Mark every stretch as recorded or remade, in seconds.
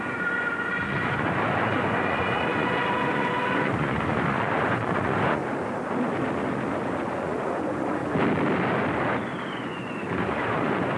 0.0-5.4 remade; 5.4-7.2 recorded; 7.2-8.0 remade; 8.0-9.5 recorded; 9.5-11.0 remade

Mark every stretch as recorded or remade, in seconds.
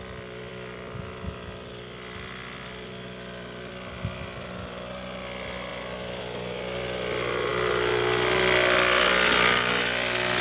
0.0-10.4 recorded